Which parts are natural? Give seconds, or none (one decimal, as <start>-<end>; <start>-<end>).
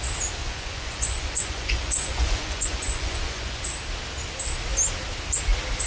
0.0-0.4; 3.6-5.9